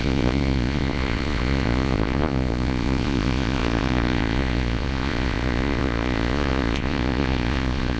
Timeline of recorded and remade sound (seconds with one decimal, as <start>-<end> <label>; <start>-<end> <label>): 0.0-8.0 remade